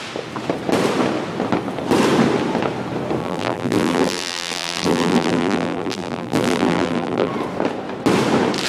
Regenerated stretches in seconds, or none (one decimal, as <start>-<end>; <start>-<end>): 3.2-7.3